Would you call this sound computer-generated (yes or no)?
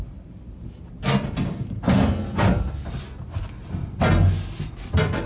no